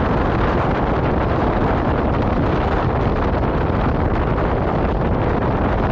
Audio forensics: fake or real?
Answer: real